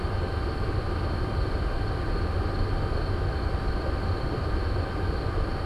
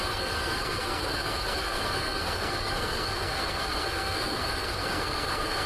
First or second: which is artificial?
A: second